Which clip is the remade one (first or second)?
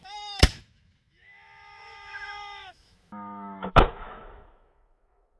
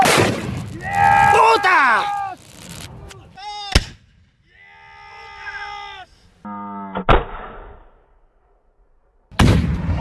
first